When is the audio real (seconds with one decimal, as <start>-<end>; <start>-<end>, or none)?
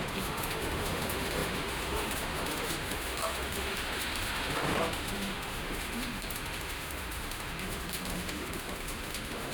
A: none